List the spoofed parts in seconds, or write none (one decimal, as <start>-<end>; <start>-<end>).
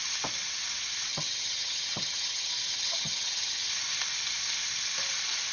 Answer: 1.1-3.7